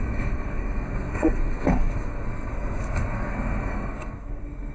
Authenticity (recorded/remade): remade